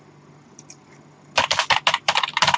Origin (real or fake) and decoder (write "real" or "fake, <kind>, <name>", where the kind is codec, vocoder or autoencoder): real